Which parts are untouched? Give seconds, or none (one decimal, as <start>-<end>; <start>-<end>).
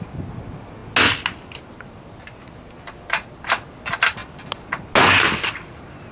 0.0-6.1